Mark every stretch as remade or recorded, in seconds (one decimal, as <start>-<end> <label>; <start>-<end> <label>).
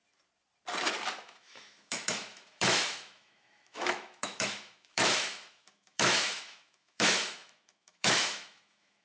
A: 0.0-1.1 recorded; 1.1-9.0 remade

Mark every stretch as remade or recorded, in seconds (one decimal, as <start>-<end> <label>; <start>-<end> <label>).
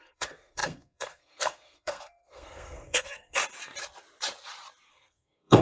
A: 0.0-3.4 remade; 3.4-4.9 recorded; 4.9-5.6 remade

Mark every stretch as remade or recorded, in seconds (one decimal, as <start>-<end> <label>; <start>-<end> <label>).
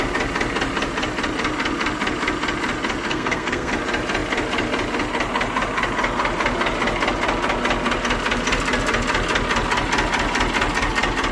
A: 0.0-3.1 recorded; 3.1-3.7 remade; 3.7-11.3 recorded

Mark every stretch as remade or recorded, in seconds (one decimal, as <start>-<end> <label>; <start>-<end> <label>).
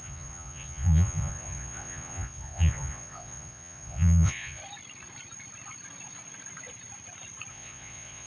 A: 0.0-4.6 remade; 4.6-7.5 recorded; 7.5-8.3 remade